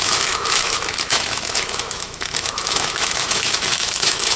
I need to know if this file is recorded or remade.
remade